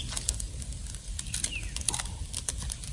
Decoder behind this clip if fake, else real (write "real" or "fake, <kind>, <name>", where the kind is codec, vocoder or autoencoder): real